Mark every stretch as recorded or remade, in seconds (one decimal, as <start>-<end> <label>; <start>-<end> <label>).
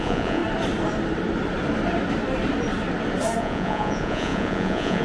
0.0-0.4 remade; 0.4-3.4 recorded; 3.4-5.0 remade